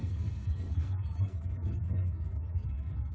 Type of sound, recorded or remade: remade